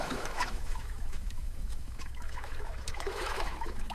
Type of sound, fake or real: fake